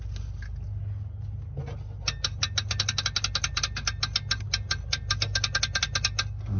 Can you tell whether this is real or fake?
real